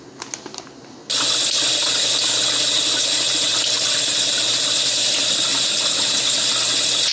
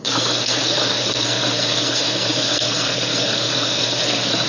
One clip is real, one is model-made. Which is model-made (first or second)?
second